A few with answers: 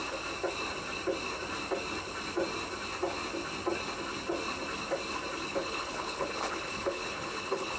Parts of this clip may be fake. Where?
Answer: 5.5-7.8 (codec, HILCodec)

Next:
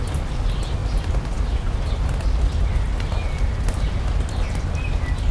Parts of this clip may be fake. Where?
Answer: none

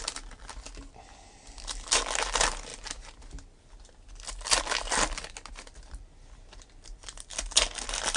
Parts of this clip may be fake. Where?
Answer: none